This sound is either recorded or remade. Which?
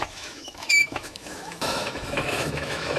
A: remade